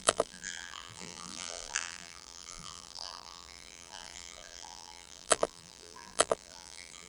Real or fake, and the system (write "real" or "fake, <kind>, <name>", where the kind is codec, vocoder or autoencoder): fake, vocoder, BigVGAN v2